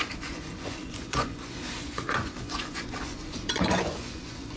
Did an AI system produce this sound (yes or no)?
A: yes